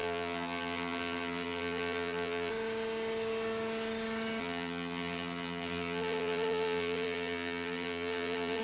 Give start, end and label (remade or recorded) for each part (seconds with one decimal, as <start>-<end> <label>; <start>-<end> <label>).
0.0-2.5 remade; 2.5-4.4 recorded; 4.4-8.6 remade